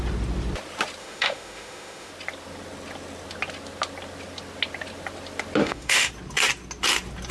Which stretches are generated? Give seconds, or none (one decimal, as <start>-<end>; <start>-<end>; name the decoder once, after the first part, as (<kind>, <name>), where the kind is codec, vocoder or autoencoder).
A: 1.0-2.1 (autoencoder, DAC-VAE); 5.6-6.1